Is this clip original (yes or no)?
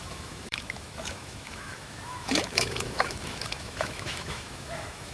no